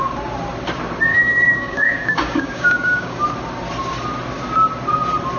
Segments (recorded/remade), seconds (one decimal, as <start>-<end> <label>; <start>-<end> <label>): 0.0-1.1 recorded; 1.1-3.2 remade; 3.2-5.4 recorded